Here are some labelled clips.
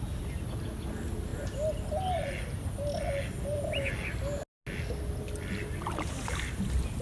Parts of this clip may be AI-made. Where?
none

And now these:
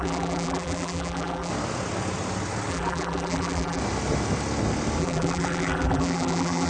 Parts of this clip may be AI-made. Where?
0.0-1.5 (vocoder, BigVGAN v2); 2.7-3.8; 5.0-6.7

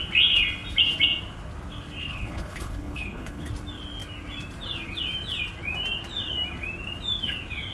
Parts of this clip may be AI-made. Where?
2.0-3.5 (codec, HILCodec)

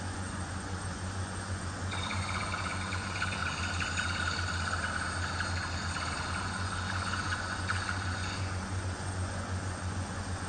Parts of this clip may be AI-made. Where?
0.0-3.4 (vocoder, Vocos); 6.4-10.5

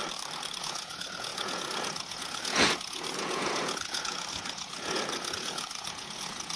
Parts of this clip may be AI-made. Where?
0.6-6.6 (vocoder, Vocos)